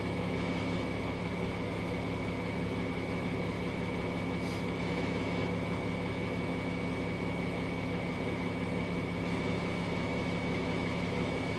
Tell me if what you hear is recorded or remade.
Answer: remade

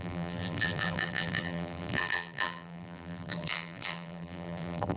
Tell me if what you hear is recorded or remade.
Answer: remade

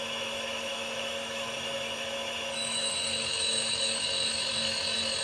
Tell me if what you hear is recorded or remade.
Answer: remade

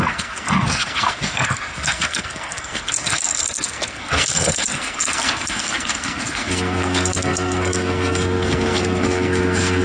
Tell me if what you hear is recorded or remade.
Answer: remade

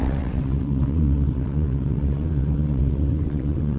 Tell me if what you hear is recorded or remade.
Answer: remade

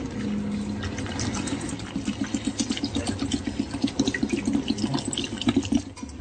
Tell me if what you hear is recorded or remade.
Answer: recorded